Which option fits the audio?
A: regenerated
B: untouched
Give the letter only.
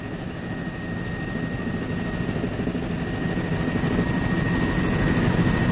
B